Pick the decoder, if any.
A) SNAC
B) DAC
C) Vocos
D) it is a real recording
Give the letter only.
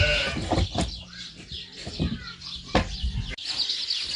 D